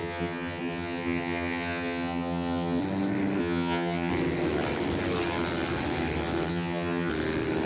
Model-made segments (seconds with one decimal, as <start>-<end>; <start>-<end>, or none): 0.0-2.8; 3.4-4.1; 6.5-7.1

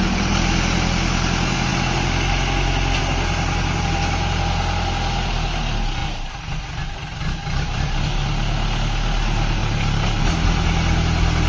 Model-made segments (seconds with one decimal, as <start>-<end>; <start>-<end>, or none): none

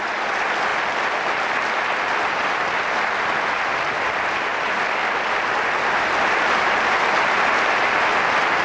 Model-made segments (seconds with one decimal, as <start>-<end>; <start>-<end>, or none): none